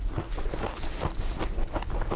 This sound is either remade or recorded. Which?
recorded